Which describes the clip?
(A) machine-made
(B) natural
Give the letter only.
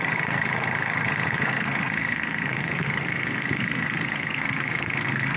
A